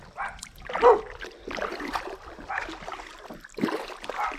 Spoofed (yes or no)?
no